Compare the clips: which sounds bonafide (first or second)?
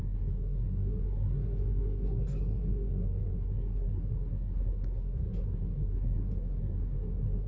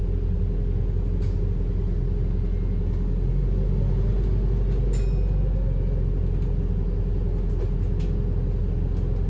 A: second